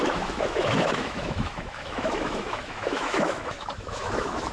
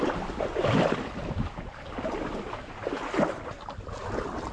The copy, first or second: first